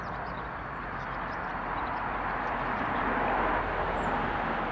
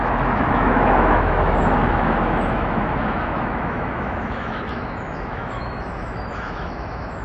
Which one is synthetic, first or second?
second